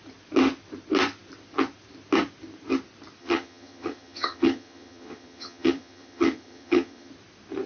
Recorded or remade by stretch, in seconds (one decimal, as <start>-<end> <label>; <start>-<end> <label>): 0.0-3.2 recorded; 3.2-7.1 remade; 7.1-7.7 recorded